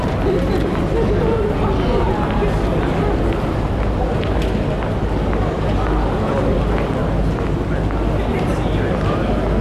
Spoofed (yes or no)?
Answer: no